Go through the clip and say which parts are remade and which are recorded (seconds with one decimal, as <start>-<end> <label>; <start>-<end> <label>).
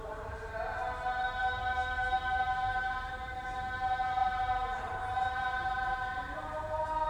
0.0-1.6 remade; 1.6-2.4 recorded; 2.4-7.1 remade